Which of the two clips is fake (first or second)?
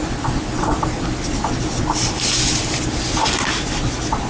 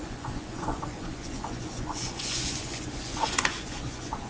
second